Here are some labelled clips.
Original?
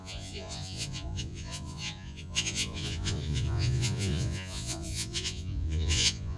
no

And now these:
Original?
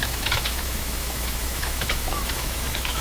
no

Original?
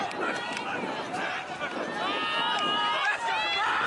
yes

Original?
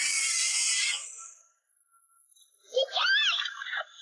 yes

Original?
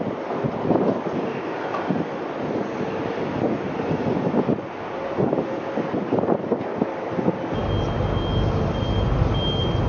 yes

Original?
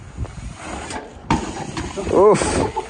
yes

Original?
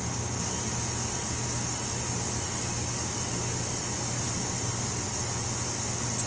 yes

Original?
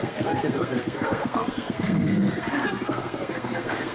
no